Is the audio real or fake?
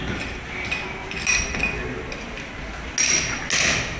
real